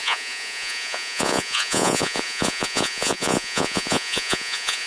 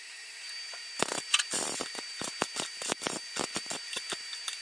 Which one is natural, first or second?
second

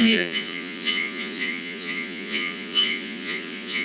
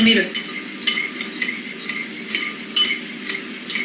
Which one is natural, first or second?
second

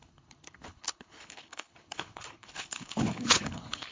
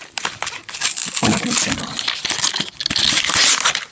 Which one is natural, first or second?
second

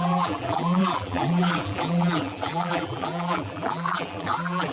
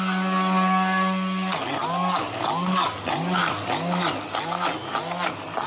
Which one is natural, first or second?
second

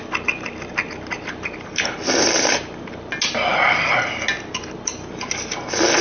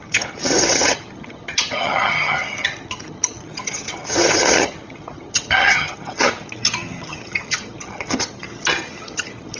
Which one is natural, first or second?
first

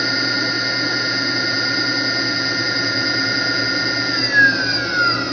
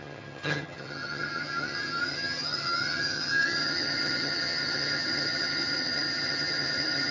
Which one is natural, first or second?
first